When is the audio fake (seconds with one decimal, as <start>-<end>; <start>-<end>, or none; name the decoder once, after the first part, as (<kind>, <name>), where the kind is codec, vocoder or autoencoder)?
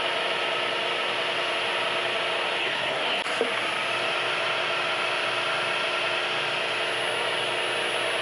2.6-3.2 (codec, SNAC)